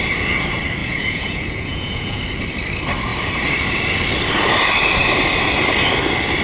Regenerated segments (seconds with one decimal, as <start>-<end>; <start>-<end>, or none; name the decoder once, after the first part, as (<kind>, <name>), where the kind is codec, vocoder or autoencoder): 0.8-2.2 (vocoder, Vocos)

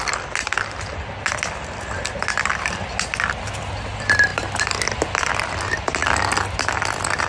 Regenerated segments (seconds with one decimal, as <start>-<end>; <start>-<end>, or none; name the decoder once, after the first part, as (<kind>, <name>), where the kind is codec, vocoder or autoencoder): none